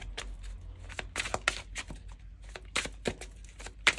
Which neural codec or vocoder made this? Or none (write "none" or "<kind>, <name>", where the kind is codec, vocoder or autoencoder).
none